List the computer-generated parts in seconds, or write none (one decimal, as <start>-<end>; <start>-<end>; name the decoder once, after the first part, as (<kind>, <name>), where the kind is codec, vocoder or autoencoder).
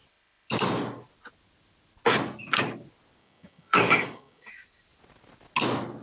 3.2-4.5 (codec, DAC)